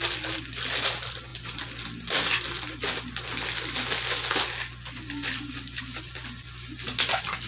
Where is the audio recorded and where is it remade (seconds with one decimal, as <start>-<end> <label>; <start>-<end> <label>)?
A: 0.0-7.5 recorded